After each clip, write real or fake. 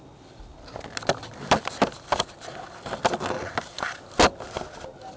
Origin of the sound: real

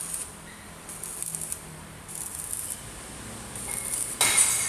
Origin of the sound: real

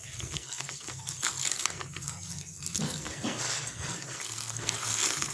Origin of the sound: fake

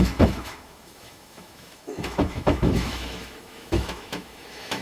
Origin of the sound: fake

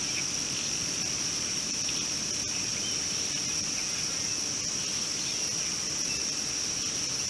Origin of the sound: real